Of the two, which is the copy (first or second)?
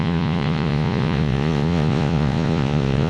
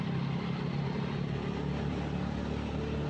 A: first